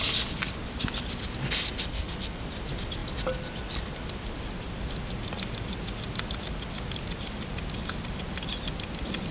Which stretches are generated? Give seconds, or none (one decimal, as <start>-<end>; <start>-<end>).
1.9-2.4